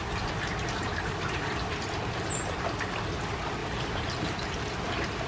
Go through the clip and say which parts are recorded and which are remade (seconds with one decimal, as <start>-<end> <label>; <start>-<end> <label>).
0.0-3.6 recorded; 3.6-4.5 remade; 4.5-5.3 recorded